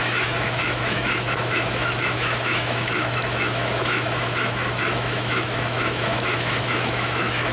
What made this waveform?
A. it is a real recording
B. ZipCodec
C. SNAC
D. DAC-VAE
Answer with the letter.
D